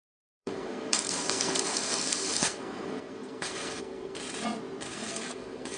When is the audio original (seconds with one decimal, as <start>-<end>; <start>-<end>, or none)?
4.2-4.8